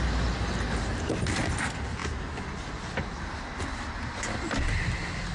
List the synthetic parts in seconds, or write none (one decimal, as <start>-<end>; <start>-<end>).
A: none